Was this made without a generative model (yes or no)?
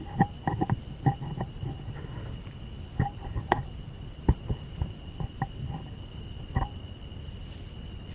no